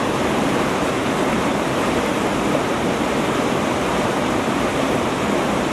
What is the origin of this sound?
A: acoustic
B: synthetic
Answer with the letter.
B